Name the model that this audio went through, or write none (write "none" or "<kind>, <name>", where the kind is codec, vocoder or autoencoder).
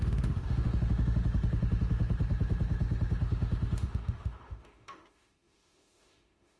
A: autoencoder, DAC-VAE